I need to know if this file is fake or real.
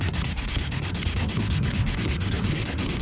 fake